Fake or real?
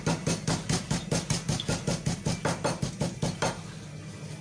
real